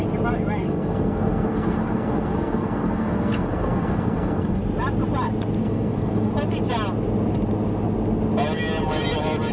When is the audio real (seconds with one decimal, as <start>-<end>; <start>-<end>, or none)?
0.0-0.6; 4.6-5.6; 6.3-9.5